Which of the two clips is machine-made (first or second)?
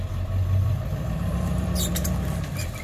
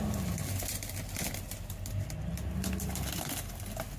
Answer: first